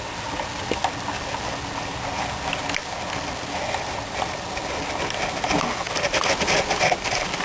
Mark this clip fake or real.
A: real